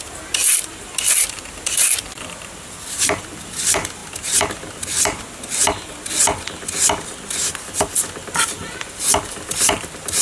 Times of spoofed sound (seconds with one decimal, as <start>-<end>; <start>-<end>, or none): 0.0-4.0; 7.6-10.2